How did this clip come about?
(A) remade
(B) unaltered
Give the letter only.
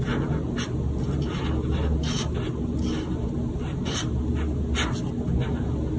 B